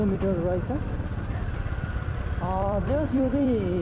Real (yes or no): no